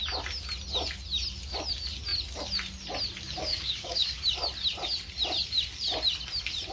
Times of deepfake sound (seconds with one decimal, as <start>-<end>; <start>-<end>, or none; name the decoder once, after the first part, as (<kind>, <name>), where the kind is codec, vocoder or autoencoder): 3.5-4.2 (codec, DAC)